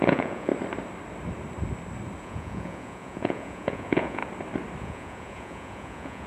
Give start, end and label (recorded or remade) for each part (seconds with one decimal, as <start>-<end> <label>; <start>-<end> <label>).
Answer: 0.0-0.5 remade; 0.5-2.2 recorded; 2.2-4.2 remade; 4.2-4.8 recorded; 4.8-6.3 remade